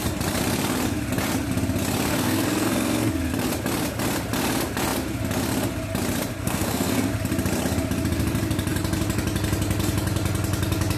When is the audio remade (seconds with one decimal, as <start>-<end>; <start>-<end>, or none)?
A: 2.1-3.1; 6.4-7.1